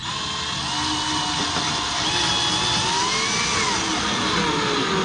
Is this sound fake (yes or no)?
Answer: no